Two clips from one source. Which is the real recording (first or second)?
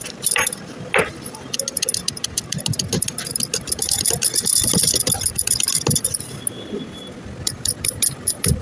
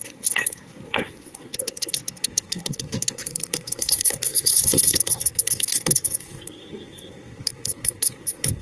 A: first